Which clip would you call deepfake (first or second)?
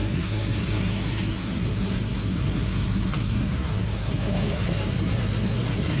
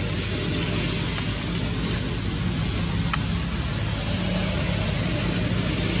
first